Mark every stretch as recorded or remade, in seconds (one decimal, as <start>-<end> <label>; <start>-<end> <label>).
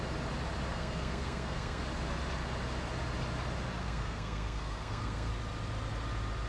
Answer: 0.0-0.7 recorded; 0.7-1.8 remade; 1.8-3.8 recorded; 3.8-5.3 remade; 5.3-6.5 recorded